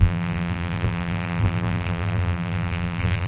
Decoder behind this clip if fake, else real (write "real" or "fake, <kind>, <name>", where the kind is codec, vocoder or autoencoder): fake, vocoder, BigVGAN v2